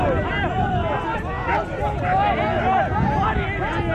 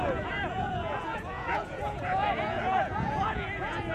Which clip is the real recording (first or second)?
first